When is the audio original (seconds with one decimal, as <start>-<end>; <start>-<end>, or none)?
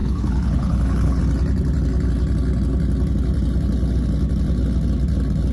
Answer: 1.2-5.5